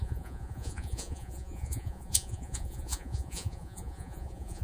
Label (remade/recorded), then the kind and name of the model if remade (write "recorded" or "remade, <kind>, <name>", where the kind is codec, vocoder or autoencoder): remade, vocoder, Vocos